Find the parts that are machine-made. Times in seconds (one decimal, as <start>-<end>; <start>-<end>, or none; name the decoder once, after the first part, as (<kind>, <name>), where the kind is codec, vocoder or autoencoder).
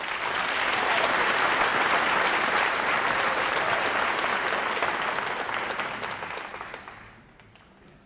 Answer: 1.7-4.3 (vocoder, BigVGAN v2)